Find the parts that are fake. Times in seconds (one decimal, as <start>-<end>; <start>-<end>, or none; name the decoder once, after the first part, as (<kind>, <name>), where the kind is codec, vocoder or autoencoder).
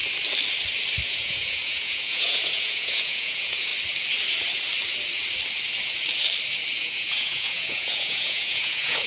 1.1-3.7 (vocoder, Vocos); 6.8-9.1